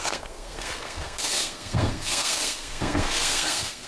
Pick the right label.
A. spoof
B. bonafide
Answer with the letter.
A